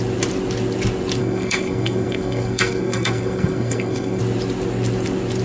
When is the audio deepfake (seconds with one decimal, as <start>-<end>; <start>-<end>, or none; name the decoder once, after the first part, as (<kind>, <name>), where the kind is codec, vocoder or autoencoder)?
1.2-4.2 (codec, SNAC)